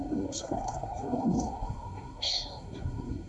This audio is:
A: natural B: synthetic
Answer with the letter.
B